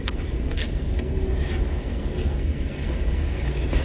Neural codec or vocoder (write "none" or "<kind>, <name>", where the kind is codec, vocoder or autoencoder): codec, SNAC